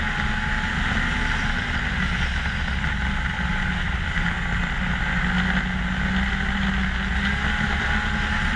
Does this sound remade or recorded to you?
recorded